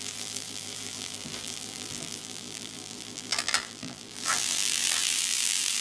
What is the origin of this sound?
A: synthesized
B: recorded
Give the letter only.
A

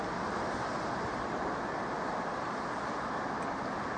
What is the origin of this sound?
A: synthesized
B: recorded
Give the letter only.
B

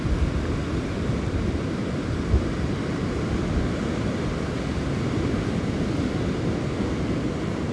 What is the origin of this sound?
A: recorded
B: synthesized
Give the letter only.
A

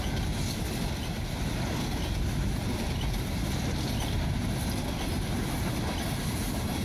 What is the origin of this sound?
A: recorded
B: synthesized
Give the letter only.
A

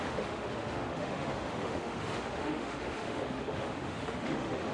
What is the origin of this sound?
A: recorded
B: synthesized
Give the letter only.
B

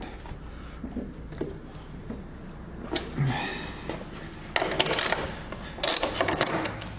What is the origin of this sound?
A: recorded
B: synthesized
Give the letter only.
A